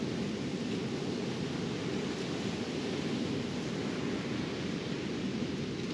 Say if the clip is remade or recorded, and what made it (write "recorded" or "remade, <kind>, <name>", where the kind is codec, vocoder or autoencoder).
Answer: recorded